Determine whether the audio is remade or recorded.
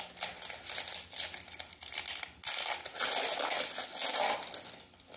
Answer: recorded